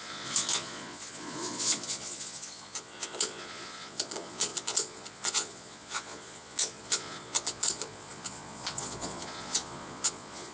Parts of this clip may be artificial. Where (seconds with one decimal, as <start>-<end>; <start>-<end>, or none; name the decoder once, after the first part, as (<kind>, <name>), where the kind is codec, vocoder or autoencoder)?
0.0-10.5 (vocoder, Vocos)